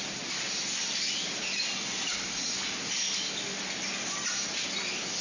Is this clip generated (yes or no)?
no